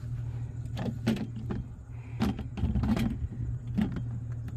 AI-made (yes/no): no